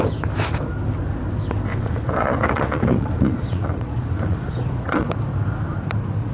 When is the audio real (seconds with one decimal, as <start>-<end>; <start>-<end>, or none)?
0.0-1.7; 5.1-6.3